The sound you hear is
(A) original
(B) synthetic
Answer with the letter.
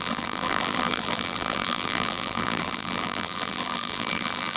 B